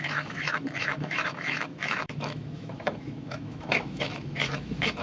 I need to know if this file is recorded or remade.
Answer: remade